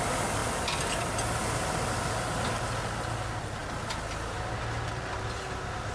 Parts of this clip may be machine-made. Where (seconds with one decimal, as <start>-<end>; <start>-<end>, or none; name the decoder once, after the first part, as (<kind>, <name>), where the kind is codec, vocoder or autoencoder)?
none